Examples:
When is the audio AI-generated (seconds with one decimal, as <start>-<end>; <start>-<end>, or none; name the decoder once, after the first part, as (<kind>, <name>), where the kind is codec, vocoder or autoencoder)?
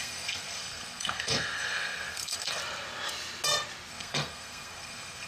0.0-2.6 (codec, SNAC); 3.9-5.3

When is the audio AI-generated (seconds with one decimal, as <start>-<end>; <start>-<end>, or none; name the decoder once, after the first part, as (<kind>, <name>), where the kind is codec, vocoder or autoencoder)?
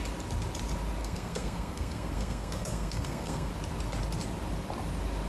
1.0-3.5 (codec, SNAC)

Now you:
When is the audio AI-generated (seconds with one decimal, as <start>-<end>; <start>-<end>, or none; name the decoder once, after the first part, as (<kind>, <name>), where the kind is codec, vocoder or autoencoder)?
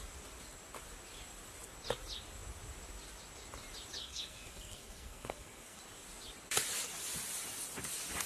4.0-5.8 (codec, SNAC)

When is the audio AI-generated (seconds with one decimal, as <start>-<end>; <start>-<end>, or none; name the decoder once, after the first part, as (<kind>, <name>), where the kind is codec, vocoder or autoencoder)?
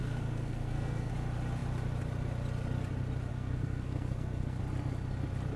0.0-1.1 (codec, SNAC); 3.3-4.6